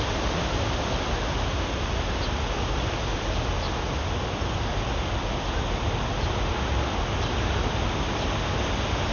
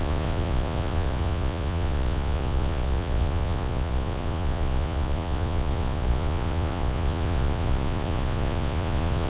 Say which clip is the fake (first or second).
second